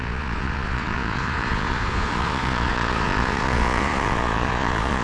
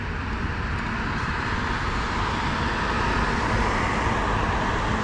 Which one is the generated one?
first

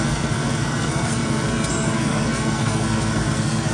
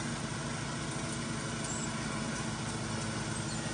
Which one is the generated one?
first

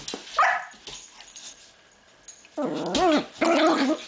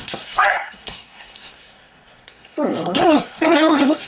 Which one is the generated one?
second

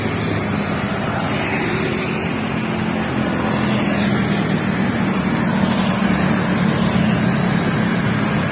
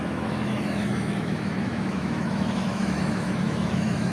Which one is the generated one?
second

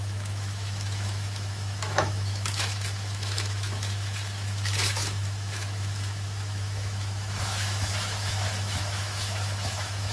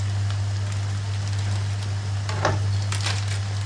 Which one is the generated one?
first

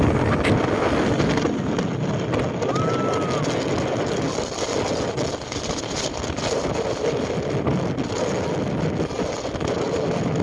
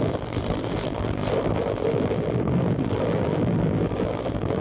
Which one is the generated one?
second